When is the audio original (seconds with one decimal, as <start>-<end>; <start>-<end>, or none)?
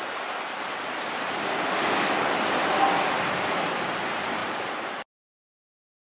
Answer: 0.0-6.1